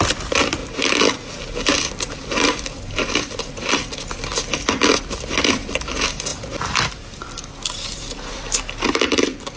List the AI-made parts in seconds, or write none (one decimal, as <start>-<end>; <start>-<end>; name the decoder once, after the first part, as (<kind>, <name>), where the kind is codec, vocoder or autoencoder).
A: 0.0-0.6 (vocoder, BigVGAN v2); 1.9-4.3; 5.0-6.3; 6.9-9.6